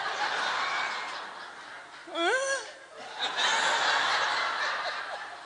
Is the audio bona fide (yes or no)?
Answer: yes